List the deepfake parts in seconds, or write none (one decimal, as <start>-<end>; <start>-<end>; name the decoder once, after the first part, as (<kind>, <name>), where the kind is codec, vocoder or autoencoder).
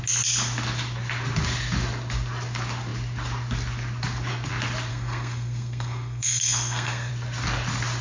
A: 4.9-7.1 (codec, SNAC)